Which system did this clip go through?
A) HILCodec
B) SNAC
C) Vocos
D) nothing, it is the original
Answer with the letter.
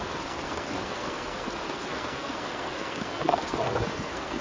B